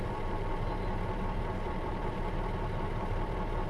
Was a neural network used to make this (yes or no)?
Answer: yes